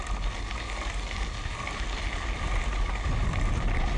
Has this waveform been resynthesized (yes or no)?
no